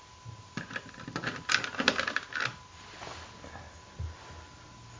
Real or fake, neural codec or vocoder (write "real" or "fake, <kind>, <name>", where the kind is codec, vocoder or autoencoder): real